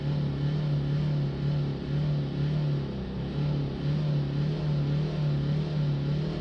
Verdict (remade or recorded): recorded